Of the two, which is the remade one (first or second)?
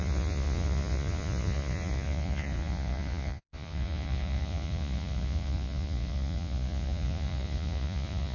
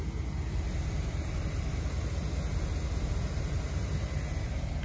first